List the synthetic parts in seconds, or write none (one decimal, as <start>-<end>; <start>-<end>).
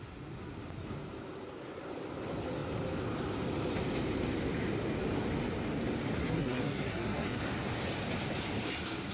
6.2-7.4